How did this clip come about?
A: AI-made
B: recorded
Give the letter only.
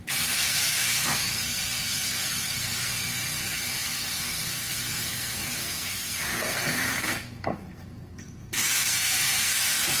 A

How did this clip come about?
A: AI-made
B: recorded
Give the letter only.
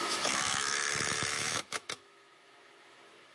A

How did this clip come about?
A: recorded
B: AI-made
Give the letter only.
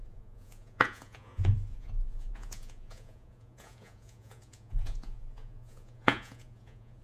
B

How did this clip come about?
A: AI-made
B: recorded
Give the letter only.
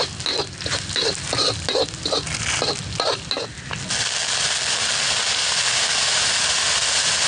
B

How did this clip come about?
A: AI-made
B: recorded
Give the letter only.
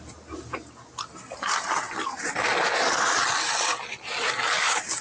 B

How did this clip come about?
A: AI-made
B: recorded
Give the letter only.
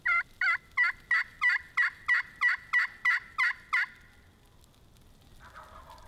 B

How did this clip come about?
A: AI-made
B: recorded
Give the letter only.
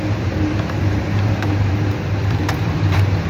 A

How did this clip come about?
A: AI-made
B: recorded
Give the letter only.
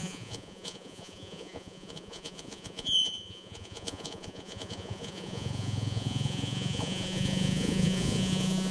A